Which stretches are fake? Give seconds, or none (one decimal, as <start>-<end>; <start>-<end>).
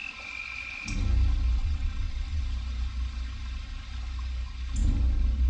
1.6-2.4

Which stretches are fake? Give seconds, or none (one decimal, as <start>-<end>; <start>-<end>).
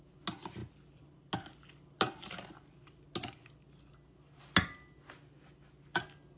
none